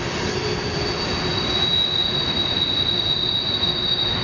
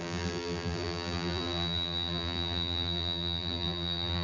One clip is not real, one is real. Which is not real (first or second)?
second